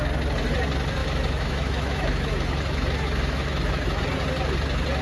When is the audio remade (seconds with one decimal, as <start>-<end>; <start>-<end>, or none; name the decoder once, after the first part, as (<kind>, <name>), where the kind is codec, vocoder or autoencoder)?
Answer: 1.0-4.0 (autoencoder, DAC-VAE)